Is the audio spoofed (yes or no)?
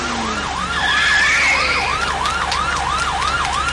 no